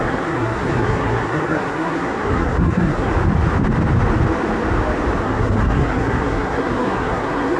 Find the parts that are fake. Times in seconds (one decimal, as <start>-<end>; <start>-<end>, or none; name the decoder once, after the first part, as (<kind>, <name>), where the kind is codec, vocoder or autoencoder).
0.0-3.1 (codec, SNAC); 5.2-7.6